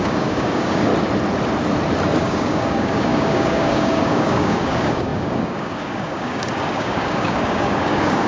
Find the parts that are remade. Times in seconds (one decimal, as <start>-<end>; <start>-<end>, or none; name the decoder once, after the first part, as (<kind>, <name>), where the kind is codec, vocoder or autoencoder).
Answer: 0.0-0.9 (codec, DAC); 2.2-8.3